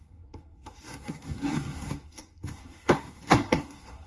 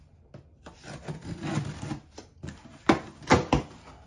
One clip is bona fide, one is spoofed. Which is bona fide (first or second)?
second